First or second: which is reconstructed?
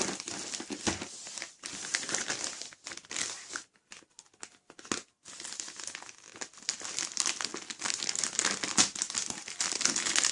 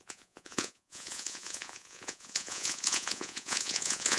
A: second